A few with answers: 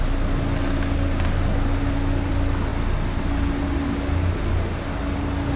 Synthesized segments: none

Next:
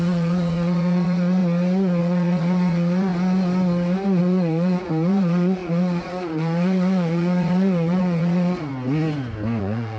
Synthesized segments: 0.0-1.4 (vocoder, Vocos); 2.0-3.1; 4.2-8.7; 9.6-10.0

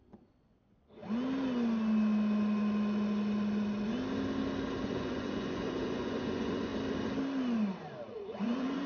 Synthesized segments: 0.0-1.0 (vocoder, Vocos); 4.8-6.7; 8.1-8.9

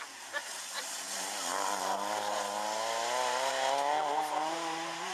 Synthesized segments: none